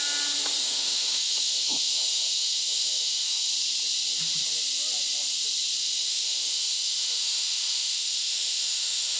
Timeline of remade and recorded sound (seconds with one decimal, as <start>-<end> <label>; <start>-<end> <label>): 0.0-0.6 recorded; 0.6-3.5 remade; 3.5-5.8 recorded; 5.8-9.2 remade